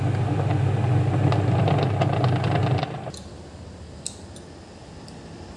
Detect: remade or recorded recorded